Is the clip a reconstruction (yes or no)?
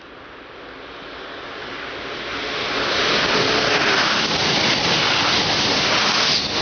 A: no